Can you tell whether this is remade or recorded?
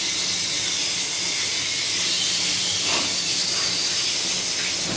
recorded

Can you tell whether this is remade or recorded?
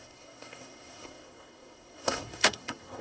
remade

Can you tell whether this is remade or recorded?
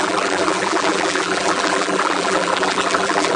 remade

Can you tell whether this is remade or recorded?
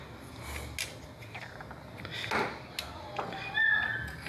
recorded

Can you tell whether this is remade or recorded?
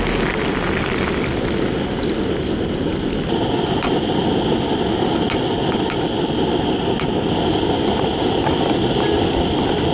recorded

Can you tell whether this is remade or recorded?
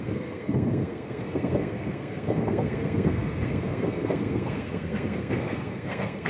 remade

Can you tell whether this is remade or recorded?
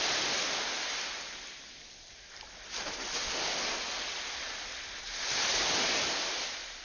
recorded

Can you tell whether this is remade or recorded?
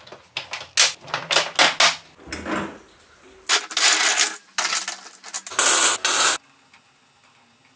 recorded